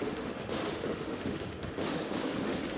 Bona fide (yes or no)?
no